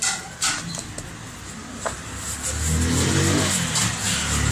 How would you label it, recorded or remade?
recorded